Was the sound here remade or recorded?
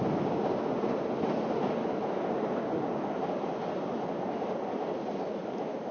recorded